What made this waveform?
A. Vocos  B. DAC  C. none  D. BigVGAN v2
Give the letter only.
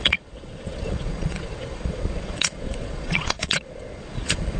A